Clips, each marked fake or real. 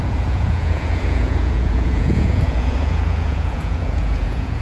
fake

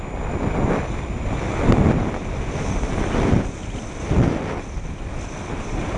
fake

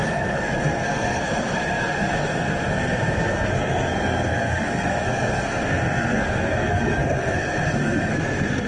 fake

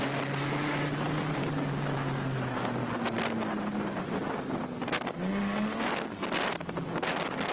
real